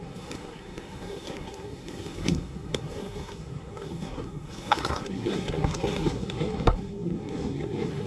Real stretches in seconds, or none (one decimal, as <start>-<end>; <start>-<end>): none